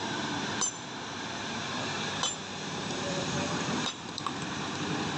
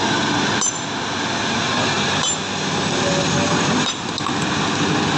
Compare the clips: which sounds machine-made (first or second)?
first